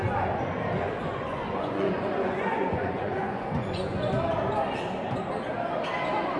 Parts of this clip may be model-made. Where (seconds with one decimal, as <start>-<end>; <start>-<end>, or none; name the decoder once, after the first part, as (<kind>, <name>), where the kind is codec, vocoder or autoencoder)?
1.0-4.1 (vocoder, Vocos)